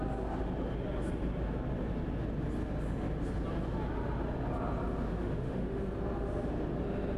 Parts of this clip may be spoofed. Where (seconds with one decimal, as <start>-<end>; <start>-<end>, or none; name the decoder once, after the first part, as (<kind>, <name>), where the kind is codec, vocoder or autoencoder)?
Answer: 5.1-5.8 (autoencoder, DAC-VAE)